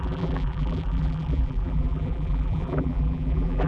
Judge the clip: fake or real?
fake